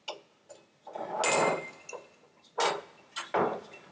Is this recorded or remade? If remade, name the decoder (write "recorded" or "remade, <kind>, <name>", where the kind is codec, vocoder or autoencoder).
recorded